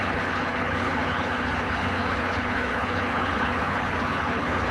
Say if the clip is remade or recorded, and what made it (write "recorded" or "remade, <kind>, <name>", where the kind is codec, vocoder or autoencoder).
remade, codec, HILCodec